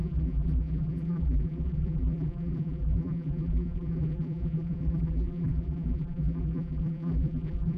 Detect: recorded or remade remade